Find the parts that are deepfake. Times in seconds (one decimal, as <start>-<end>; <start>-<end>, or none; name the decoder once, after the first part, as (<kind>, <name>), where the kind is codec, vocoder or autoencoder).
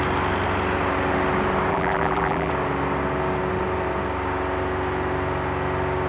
1.7-2.5 (vocoder, BigVGAN v2)